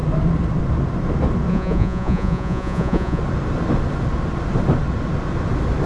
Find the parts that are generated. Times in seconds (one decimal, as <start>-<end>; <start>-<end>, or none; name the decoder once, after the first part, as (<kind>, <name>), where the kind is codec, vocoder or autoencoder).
1.5-3.2 (vocoder, Vocos)